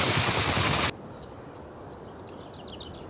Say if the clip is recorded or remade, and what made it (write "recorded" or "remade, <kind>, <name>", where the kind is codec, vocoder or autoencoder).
recorded